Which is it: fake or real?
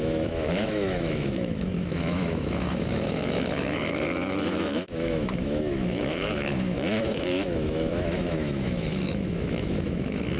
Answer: fake